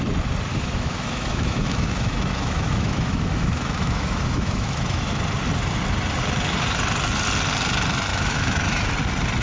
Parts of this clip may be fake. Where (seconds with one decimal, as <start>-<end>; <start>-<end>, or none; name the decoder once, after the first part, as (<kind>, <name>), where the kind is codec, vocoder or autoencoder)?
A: 0.5-5.1 (autoencoder, DAC-VAE); 8.1-8.9